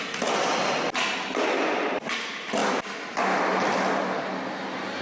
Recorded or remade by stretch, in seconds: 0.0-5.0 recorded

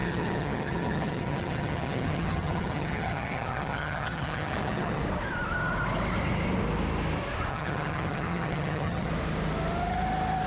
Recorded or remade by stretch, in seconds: 0.0-5.0 remade; 5.0-7.5 recorded; 7.5-9.1 remade; 9.1-10.5 recorded

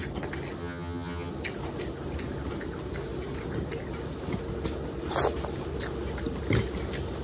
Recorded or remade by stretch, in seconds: 0.0-0.6 recorded; 0.6-1.3 remade; 1.3-7.2 recorded

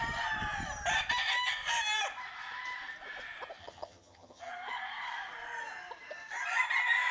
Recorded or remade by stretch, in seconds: 0.0-3.6 recorded; 3.6-4.5 remade; 4.5-7.1 recorded

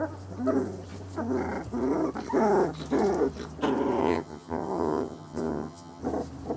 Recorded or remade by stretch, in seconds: 0.0-4.0 recorded; 4.0-6.0 remade; 6.0-6.6 recorded

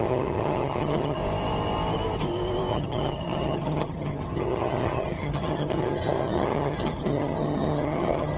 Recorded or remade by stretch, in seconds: 0.0-1.2 remade; 1.2-2.7 recorded; 2.7-8.4 remade

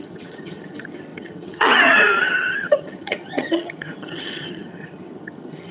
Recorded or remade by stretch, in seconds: 0.0-5.7 remade

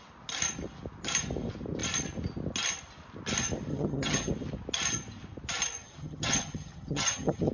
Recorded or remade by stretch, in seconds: 0.0-3.7 recorded; 3.7-4.3 remade; 4.3-5.8 recorded; 5.8-7.5 remade